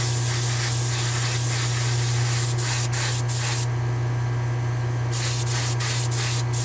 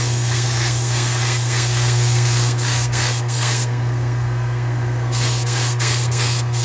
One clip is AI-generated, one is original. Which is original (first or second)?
first